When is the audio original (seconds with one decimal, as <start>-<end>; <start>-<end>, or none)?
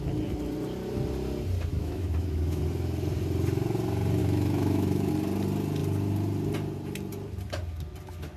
0.0-1.7; 2.6-4.2; 5.1-8.4